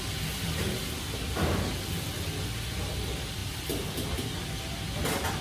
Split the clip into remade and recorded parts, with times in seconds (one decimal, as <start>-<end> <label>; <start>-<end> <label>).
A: 0.0-5.4 recorded